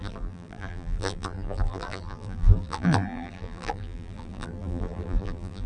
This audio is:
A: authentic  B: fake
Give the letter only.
B